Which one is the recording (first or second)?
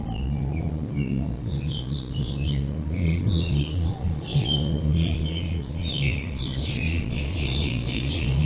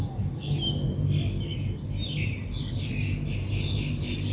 second